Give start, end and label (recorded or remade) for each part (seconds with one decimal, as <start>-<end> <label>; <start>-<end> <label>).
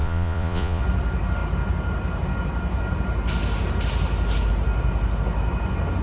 0.0-0.8 remade; 0.8-6.0 recorded